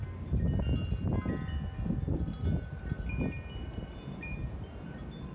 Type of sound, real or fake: real